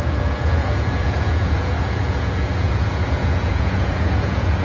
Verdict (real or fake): fake